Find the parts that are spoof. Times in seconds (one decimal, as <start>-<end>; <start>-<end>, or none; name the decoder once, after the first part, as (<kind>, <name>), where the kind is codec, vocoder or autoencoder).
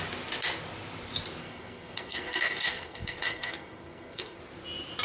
1.4-4.4 (codec, SNAC)